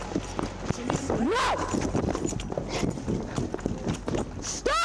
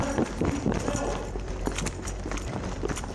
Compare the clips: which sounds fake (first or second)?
second